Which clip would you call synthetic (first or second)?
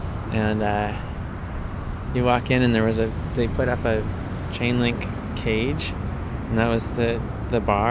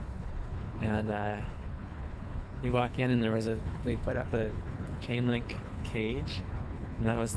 second